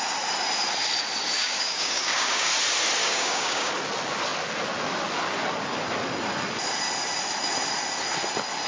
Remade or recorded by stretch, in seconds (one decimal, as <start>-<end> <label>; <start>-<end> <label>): 0.0-1.4 recorded; 1.4-2.5 remade; 2.5-3.0 recorded; 3.0-3.7 remade; 3.7-8.7 recorded

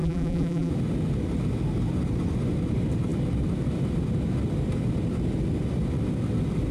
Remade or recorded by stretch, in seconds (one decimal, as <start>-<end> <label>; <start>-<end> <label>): 0.0-0.7 remade; 0.7-6.7 recorded

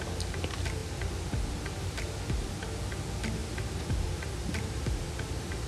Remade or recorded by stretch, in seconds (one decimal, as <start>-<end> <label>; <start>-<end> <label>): 0.0-5.7 recorded

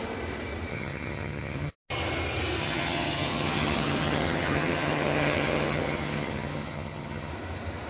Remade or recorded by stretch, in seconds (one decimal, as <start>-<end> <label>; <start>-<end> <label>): 0.0-0.7 recorded; 0.7-1.7 remade; 1.7-2.6 recorded; 2.6-7.3 remade; 7.3-7.9 recorded

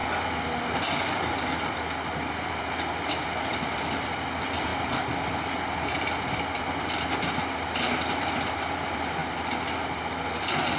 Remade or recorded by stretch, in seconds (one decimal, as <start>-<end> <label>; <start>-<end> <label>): 0.0-1.2 recorded; 1.2-4.7 remade; 4.7-6.2 recorded; 6.2-9.2 remade; 9.2-10.4 recorded; 10.4-10.8 remade

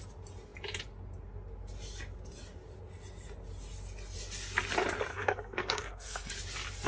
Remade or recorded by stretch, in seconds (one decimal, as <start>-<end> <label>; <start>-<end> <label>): 0.0-5.1 recorded; 5.1-6.3 remade; 6.3-6.9 recorded

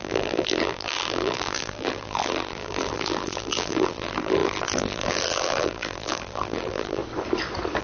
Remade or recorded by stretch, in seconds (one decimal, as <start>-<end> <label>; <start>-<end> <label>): 0.0-7.0 remade; 7.0-7.8 recorded

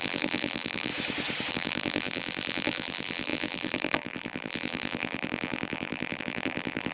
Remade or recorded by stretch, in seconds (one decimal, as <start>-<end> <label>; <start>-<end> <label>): 0.0-0.9 remade; 0.9-1.5 recorded; 1.5-6.9 remade